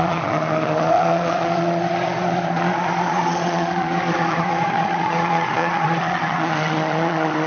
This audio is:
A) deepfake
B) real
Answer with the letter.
A